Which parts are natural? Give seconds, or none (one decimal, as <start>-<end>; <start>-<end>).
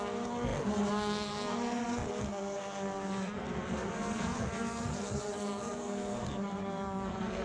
none